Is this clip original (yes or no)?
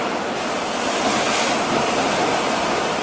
yes